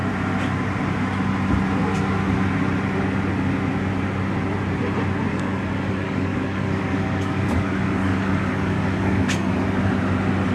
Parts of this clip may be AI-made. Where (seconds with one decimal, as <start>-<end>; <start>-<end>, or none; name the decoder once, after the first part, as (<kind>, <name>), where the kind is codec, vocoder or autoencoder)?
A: 5.3-9.5 (codec, DAC)